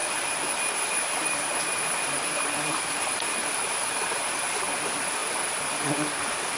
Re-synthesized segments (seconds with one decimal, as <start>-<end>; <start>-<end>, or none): 0.0-4.0